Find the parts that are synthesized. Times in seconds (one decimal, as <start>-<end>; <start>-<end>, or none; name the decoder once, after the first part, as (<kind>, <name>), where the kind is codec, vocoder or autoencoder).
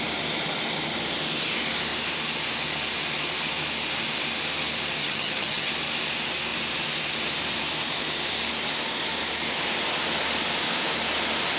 5.0-5.7 (vocoder, HiFi-GAN)